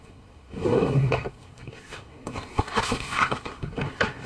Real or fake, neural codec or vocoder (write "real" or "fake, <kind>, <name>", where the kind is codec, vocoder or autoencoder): fake, codec, SNAC